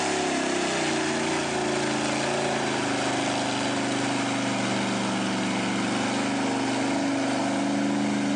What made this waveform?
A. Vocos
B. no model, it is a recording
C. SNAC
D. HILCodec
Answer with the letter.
B